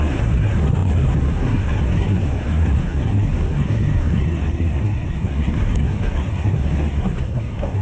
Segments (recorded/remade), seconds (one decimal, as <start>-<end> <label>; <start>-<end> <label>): 0.0-7.8 remade